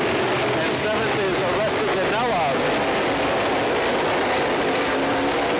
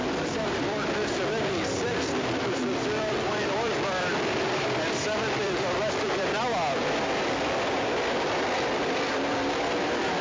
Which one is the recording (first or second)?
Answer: first